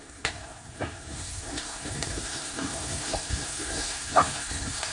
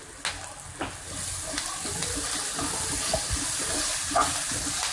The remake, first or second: first